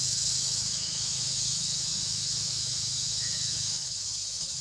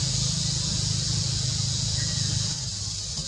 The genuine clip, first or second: second